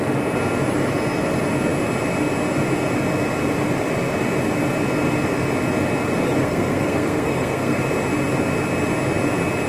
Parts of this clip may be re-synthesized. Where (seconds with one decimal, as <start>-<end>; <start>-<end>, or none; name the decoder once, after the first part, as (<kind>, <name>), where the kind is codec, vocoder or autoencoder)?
6.4-7.8 (codec, SNAC)